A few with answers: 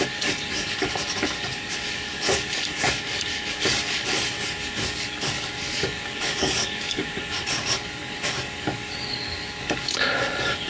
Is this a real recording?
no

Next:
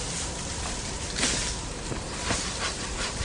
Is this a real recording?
yes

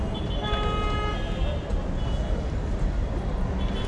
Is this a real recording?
yes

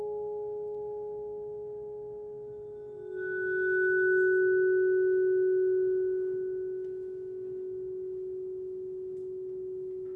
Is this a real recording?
yes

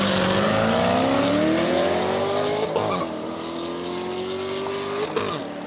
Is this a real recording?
yes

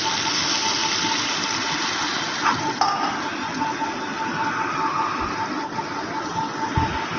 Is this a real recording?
yes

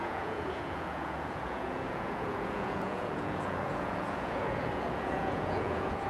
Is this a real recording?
no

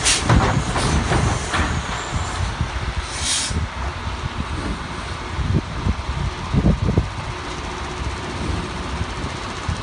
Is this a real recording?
yes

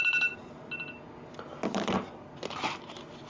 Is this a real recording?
yes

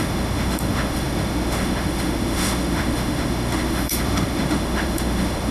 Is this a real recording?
no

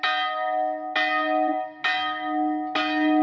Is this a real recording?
yes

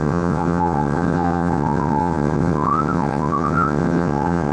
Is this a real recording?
no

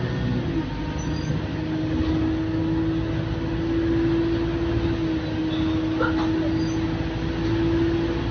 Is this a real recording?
yes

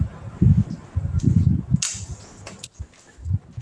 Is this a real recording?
yes